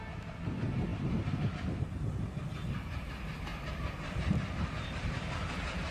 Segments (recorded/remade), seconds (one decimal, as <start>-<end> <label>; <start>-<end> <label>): 0.0-3.5 recorded; 3.5-5.5 remade; 5.5-5.9 recorded